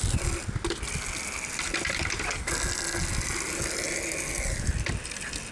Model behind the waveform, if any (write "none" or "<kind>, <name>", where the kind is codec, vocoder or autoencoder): none